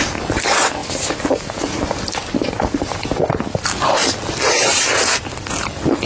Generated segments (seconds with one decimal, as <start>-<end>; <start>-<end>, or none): none